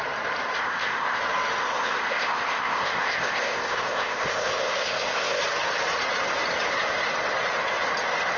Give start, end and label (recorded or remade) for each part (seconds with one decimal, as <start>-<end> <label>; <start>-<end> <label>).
0.0-0.6 recorded; 0.6-1.2 remade; 1.2-1.6 recorded; 1.6-5.4 remade; 5.4-8.4 recorded